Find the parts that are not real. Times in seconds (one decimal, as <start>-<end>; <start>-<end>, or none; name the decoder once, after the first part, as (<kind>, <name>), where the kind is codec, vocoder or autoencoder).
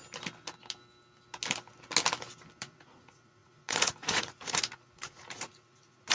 2.6-6.1 (vocoder, Vocos)